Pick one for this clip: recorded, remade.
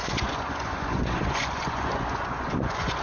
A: remade